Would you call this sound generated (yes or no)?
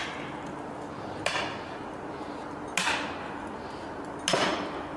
no